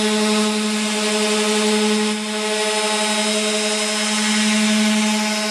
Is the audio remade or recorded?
recorded